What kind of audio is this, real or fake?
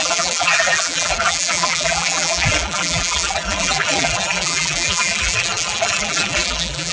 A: fake